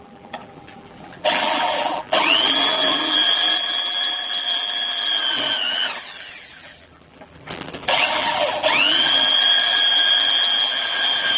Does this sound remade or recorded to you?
remade